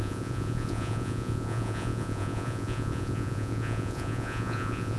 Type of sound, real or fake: fake